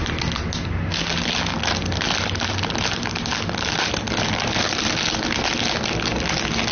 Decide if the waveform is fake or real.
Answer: real